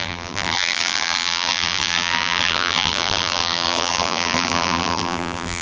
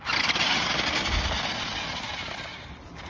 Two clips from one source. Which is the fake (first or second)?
first